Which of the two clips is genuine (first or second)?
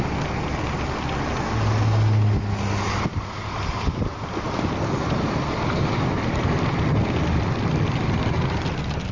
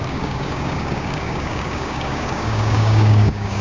first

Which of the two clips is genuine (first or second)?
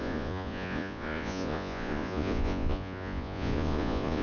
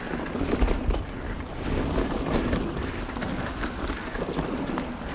second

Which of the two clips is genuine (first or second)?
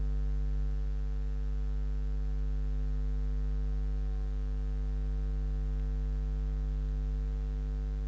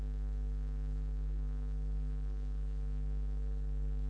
first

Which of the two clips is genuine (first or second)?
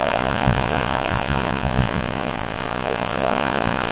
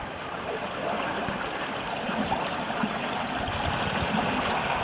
second